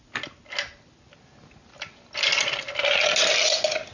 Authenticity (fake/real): real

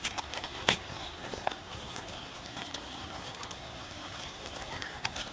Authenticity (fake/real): fake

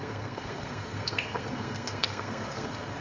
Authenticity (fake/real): fake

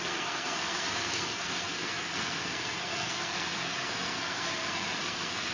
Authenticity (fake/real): fake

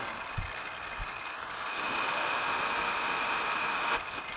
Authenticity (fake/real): real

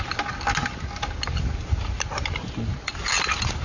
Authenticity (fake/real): real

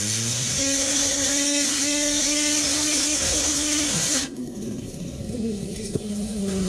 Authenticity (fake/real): fake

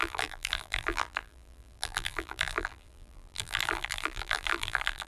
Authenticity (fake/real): fake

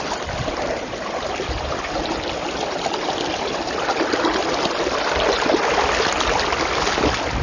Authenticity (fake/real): real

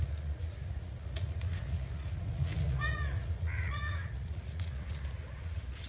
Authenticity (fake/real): fake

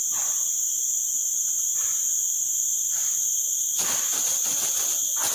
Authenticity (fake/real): real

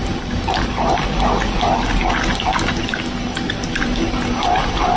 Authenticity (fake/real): real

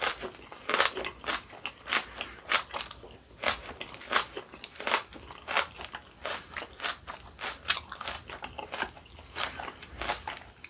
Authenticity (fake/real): real